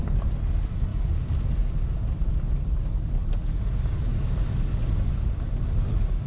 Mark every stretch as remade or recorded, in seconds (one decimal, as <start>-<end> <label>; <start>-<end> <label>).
0.0-6.3 recorded